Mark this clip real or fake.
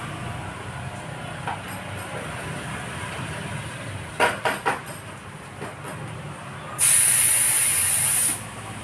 real